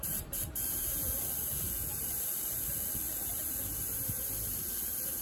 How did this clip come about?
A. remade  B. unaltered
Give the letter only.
A